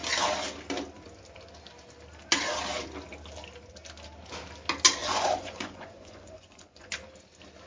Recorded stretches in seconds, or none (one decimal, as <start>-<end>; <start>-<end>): 0.0-5.0; 6.9-7.7